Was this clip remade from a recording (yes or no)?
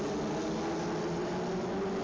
no